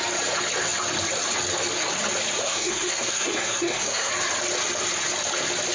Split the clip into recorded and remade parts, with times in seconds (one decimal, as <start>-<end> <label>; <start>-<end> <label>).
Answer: 0.0-2.4 recorded; 2.4-4.1 remade; 4.1-5.7 recorded